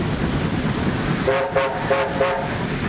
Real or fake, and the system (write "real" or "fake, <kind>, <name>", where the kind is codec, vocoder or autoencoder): real